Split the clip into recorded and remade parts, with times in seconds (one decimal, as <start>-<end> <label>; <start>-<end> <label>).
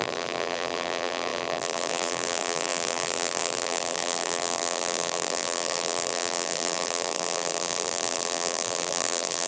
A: 0.0-9.5 remade